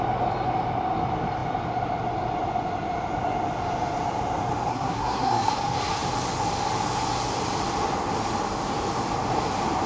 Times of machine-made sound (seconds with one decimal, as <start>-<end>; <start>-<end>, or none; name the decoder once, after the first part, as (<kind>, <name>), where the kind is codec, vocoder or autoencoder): 4.7-5.5 (codec, SNAC)